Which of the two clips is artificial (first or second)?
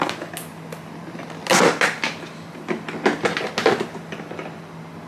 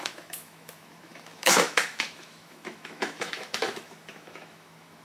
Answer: second